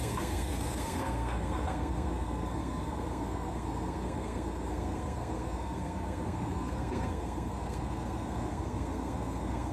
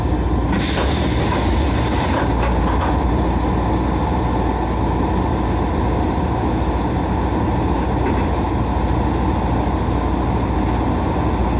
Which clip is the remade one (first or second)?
first